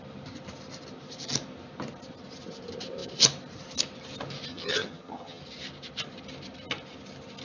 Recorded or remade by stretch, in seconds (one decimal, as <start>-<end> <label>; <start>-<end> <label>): 0.0-4.5 recorded; 4.5-5.4 remade; 5.4-7.4 recorded